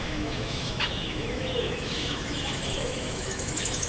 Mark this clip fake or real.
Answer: fake